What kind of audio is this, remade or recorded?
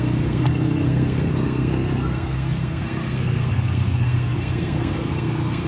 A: remade